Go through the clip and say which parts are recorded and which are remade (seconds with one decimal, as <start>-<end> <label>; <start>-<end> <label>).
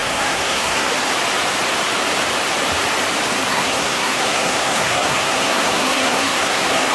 0.0-0.9 remade; 0.9-3.5 recorded; 3.5-6.9 remade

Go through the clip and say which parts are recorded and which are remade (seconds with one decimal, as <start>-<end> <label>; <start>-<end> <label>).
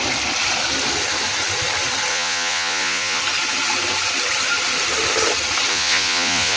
0.0-2.1 recorded; 2.1-3.2 remade; 3.2-5.7 recorded; 5.7-6.6 remade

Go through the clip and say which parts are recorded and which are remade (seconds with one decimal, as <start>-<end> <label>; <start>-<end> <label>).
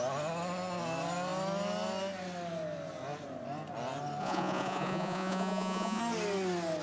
0.0-4.2 recorded; 4.2-6.0 remade; 6.0-6.8 recorded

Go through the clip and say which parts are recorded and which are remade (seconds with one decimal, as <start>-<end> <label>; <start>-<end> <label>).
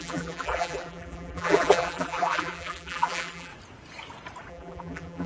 0.0-3.5 remade; 3.5-4.5 recorded; 4.5-5.3 remade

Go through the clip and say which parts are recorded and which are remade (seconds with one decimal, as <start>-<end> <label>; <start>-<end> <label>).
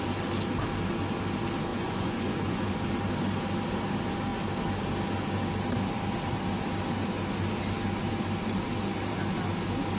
0.0-1.7 recorded; 1.7-2.7 remade; 2.7-10.0 recorded